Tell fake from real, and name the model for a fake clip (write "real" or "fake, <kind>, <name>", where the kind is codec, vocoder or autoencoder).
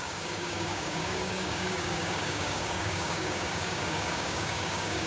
fake, codec, DAC